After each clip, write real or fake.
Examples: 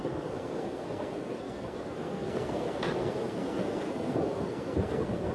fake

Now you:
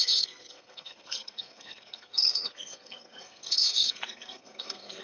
fake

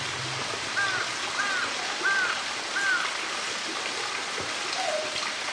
real